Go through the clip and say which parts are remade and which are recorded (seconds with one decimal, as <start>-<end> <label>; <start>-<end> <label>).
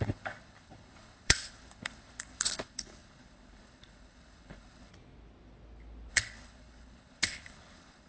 0.0-4.9 remade; 4.9-6.1 recorded; 6.1-8.1 remade